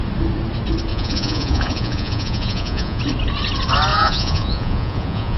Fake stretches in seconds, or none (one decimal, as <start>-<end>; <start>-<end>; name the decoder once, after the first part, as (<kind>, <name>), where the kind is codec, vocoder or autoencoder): 0.9-3.0 (vocoder, Vocos); 3.9-5.4